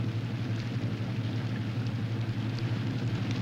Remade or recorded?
recorded